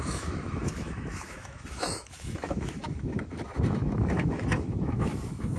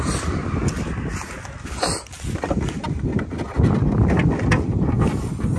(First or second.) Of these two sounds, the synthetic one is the first